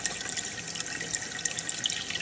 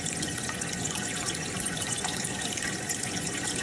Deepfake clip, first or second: second